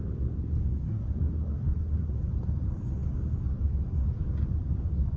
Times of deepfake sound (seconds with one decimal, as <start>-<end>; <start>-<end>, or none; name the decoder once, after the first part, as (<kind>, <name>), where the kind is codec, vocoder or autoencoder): 0.6-2.1 (codec, SNAC)